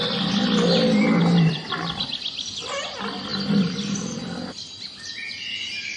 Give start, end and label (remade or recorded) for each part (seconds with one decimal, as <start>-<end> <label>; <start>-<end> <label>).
0.0-6.0 recorded